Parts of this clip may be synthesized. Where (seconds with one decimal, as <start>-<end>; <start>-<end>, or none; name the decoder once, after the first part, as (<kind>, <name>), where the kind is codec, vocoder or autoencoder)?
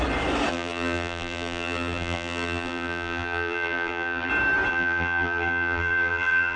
0.5-4.3 (vocoder, BigVGAN v2); 4.7-6.6